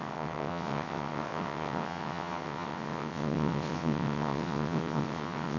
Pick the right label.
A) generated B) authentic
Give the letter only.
A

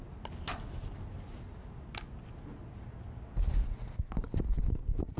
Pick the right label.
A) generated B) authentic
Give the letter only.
B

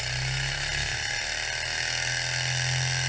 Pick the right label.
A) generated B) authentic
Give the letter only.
B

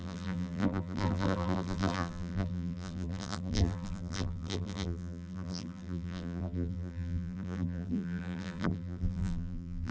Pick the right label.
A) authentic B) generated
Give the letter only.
B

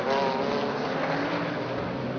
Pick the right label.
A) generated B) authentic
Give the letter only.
B